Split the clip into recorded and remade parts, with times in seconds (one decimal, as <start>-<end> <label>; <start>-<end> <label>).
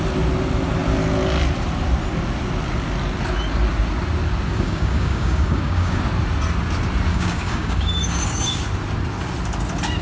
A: 0.0-4.5 recorded; 4.5-6.0 remade; 6.0-7.1 recorded; 7.1-8.6 remade; 8.6-10.0 recorded